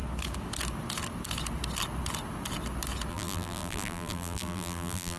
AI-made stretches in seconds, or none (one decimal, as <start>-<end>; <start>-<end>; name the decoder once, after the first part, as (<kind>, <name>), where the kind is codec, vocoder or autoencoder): 3.1-5.2 (vocoder, BigVGAN v2)